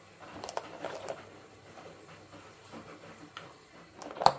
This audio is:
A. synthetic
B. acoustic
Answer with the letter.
B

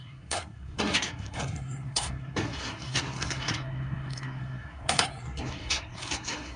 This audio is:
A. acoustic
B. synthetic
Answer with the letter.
B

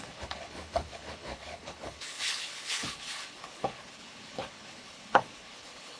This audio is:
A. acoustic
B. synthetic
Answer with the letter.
B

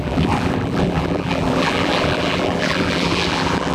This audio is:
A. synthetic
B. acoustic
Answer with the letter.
A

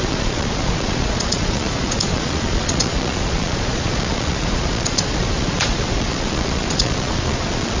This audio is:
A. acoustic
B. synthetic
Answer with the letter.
B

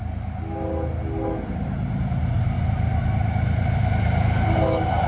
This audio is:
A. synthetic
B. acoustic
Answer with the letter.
B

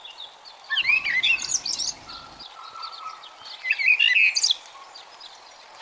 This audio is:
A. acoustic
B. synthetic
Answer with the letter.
A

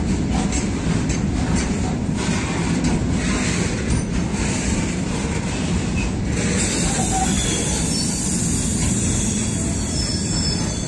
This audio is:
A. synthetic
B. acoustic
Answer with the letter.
B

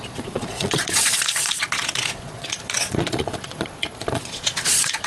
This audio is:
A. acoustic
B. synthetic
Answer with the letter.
B